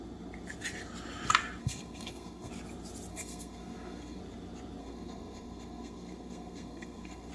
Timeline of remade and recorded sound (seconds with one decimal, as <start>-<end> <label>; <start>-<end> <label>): 0.0-1.6 recorded; 1.6-2.5 remade; 2.5-3.1 recorded; 3.1-4.2 remade; 4.2-4.8 recorded; 4.8-7.3 remade